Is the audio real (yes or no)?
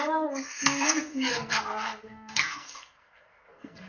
no